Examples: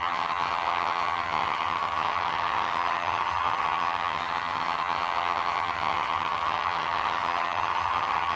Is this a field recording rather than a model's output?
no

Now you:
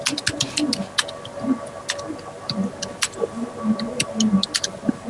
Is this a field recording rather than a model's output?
yes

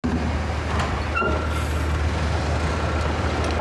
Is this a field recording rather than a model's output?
yes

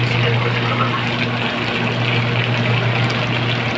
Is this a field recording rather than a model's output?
yes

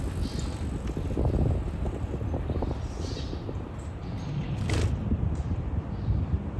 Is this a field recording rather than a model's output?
yes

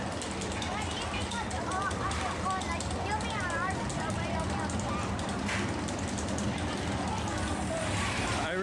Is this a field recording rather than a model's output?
yes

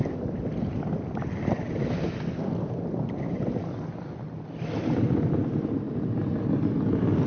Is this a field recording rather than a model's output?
yes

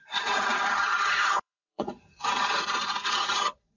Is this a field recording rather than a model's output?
no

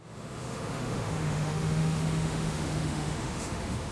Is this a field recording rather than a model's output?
no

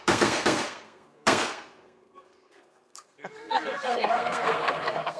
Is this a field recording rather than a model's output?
no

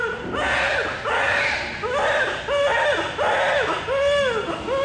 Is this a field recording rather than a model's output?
yes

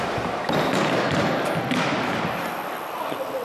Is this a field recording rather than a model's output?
yes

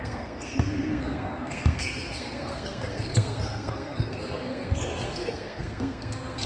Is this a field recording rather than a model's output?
no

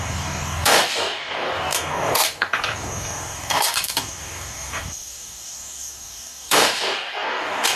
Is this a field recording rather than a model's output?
no